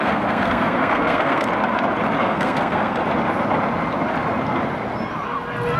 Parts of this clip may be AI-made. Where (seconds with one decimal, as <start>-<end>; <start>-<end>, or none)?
0.0-1.5; 2.2-3.0

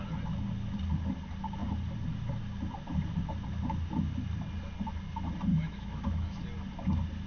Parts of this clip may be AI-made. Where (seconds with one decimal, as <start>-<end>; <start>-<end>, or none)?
5.5-6.4

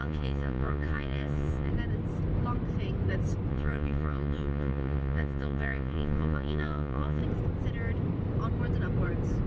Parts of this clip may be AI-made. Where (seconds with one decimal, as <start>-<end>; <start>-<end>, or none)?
0.0-1.7; 3.5-7.2

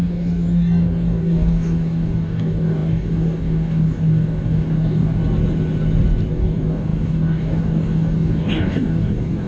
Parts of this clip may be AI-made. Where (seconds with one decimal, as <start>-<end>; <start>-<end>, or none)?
0.0-5.2; 6.3-9.5

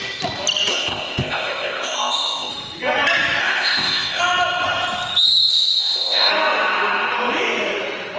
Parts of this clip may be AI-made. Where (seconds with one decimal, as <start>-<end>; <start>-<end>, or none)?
0.7-2.5; 3.4-4.2; 5.5-6.3

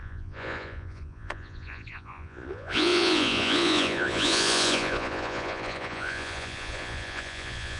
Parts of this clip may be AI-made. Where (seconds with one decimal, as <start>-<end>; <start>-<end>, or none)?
0.0-7.8